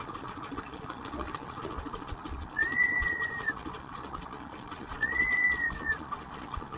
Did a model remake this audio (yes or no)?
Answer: yes